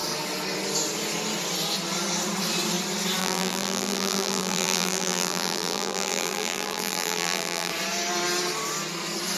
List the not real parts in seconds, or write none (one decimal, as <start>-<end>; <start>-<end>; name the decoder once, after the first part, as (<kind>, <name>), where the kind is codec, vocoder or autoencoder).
3.2-7.7 (vocoder, BigVGAN v2)